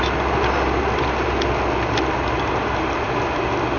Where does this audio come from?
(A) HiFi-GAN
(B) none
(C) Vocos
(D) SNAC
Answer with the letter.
B